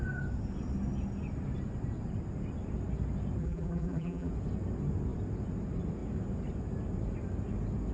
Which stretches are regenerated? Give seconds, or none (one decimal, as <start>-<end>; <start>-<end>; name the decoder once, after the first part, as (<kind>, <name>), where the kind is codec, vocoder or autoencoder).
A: 3.4-4.3 (vocoder, BigVGAN v2)